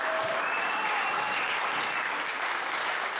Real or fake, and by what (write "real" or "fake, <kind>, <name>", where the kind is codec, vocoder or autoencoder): real